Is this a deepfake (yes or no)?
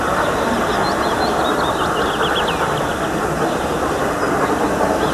no